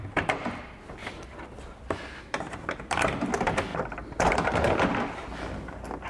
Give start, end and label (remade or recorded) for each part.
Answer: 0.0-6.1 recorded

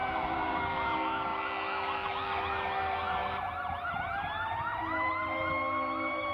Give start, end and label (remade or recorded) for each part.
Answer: 0.0-0.6 remade; 0.6-6.3 recorded

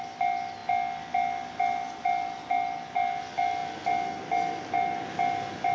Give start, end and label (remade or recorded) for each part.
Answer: 0.0-5.7 recorded

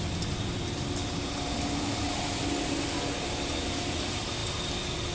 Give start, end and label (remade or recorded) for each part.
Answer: 0.0-5.1 recorded

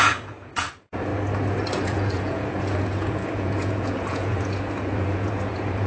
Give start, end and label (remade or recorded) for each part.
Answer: 0.0-1.1 remade; 1.1-1.7 recorded; 1.7-5.9 remade

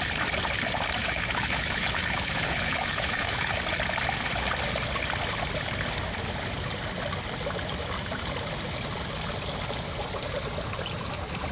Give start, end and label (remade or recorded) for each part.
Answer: 0.0-1.0 recorded; 1.0-3.5 remade; 3.5-11.5 recorded